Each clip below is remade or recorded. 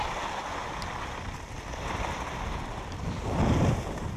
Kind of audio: recorded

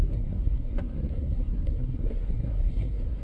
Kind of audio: remade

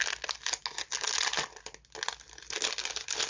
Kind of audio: recorded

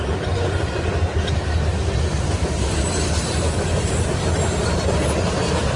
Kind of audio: recorded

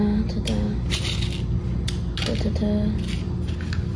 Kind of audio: recorded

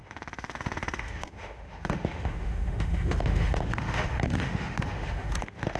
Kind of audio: remade